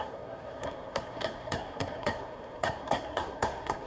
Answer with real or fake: fake